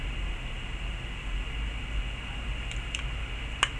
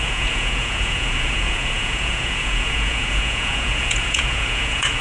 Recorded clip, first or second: first